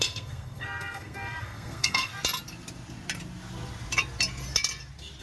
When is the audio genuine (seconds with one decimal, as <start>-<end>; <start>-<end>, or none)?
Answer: 2.1-5.2